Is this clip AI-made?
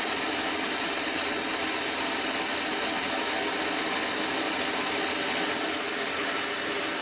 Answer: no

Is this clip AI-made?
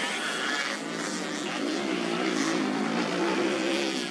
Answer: no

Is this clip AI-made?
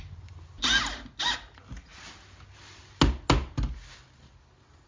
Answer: no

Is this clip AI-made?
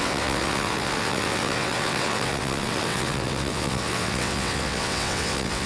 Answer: yes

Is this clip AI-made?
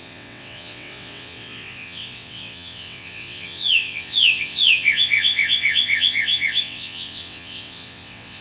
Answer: yes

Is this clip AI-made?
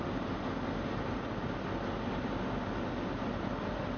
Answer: no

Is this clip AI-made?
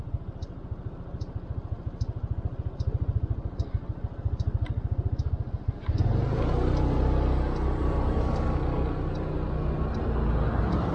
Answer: no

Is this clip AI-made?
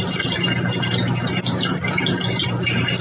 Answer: no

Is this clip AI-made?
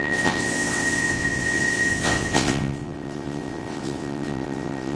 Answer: yes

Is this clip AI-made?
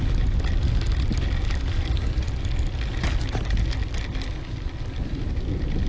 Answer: no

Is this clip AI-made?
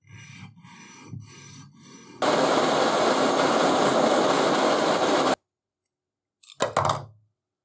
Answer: no